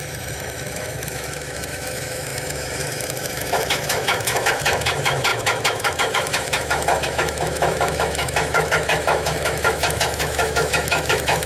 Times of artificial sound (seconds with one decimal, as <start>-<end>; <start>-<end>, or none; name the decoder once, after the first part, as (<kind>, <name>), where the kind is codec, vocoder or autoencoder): 0.0-11.5 (autoencoder, DAC-VAE)